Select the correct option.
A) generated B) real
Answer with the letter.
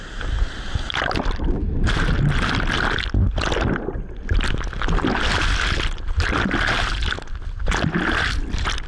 B